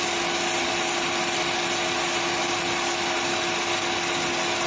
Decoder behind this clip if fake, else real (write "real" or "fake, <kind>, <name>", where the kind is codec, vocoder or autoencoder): real